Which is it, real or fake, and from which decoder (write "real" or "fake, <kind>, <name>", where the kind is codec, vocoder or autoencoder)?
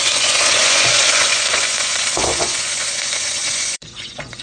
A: fake, vocoder, Vocos